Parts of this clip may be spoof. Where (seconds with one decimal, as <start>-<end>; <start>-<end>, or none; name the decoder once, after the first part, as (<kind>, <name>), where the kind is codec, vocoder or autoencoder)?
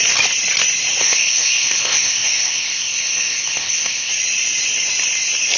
1.0-4.1 (codec, ZipCodec)